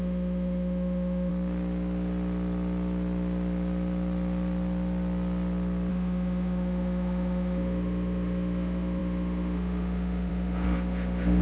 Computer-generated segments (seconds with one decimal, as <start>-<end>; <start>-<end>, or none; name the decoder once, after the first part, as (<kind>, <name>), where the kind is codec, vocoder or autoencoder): 0.0-1.3 (autoencoder, DAC-VAE); 5.9-11.4